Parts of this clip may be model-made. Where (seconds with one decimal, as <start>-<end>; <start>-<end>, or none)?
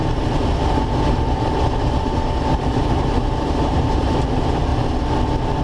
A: 0.0-4.7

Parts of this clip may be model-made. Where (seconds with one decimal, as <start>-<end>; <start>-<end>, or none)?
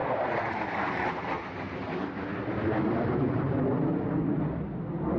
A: none